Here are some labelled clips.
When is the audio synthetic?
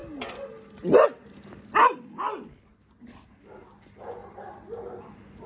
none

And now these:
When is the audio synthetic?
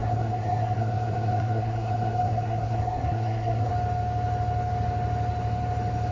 0.0-3.7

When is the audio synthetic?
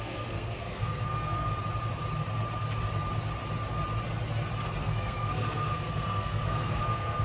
0.0-1.5; 4.8-7.2